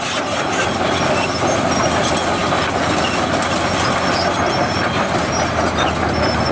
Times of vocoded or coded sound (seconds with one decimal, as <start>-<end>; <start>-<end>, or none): none